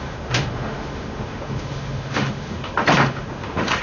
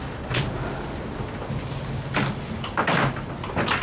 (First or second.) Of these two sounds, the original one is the second